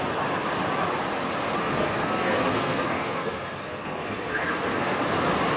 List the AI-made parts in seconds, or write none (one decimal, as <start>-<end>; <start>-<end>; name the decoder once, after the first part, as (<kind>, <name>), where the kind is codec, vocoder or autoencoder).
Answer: 1.6-5.0 (codec, SNAC)

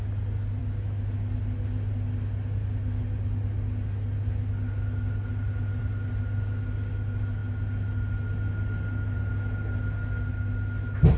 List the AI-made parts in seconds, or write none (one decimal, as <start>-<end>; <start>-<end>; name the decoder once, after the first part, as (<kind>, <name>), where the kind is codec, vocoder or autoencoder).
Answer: none

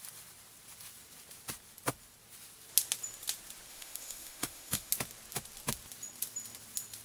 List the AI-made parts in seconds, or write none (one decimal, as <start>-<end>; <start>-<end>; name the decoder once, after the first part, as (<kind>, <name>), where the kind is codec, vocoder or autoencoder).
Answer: 3.7-4.9 (autoencoder, DAC-VAE)

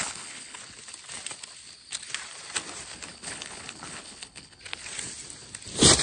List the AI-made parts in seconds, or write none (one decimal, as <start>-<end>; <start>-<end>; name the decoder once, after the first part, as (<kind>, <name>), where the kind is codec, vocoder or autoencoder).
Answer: 0.0-0.6 (codec, HILCodec); 3.1-4.6

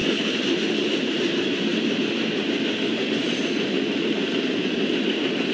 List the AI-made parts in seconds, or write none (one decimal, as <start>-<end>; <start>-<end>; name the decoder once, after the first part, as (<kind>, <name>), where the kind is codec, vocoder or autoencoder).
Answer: 0.0-1.0 (vocoder, BigVGAN v2)